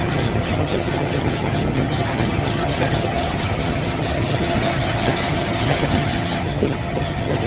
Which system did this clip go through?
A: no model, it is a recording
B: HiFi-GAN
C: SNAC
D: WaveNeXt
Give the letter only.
B